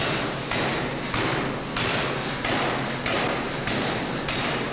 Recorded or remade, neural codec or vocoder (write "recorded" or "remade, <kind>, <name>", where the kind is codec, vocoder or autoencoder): recorded